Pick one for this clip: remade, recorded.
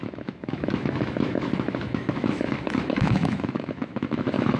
remade